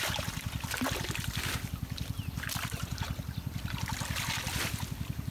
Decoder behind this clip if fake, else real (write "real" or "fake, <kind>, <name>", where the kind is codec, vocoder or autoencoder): fake, vocoder, BigVGAN v2